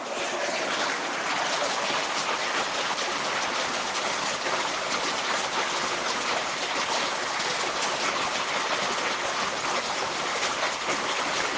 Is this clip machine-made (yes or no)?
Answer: no